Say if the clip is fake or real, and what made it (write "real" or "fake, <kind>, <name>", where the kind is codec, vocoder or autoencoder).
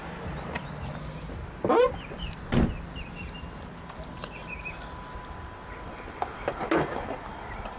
real